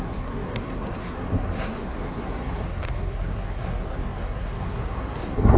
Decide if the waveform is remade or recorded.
remade